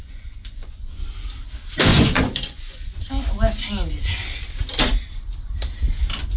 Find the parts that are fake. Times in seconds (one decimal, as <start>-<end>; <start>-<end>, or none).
0.0-1.0; 1.9-2.9